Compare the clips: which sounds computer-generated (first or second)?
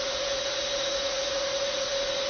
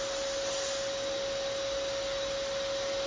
first